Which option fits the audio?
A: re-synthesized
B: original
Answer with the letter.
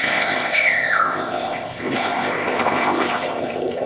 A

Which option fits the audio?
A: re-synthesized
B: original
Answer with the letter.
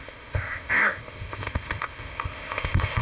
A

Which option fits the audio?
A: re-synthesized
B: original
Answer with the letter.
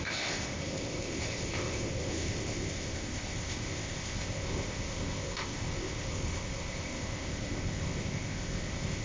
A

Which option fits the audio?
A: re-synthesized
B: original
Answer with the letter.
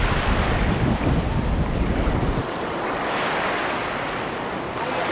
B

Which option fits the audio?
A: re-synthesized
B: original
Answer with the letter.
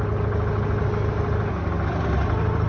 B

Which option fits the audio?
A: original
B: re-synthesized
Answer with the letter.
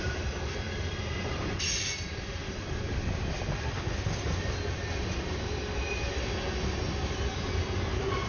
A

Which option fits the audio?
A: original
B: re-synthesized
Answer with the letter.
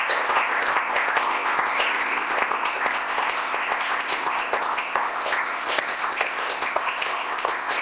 B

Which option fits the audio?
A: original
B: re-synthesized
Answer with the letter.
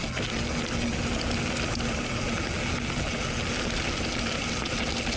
A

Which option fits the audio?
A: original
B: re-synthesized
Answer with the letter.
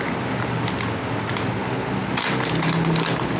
A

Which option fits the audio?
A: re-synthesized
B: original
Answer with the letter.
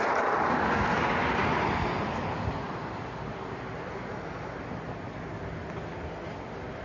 B